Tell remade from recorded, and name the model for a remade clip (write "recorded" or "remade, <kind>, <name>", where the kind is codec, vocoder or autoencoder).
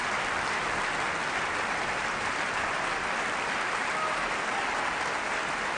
recorded